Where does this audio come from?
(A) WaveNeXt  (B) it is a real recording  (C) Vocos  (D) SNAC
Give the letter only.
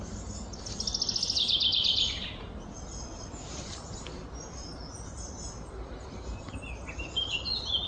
B